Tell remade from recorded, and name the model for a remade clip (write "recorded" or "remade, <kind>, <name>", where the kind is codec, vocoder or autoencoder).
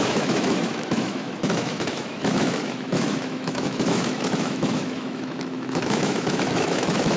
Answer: remade, autoencoder, DAC-VAE